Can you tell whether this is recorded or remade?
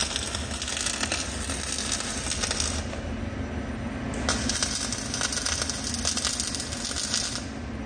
recorded